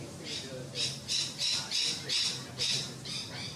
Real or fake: fake